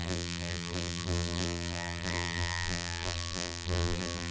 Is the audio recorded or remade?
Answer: remade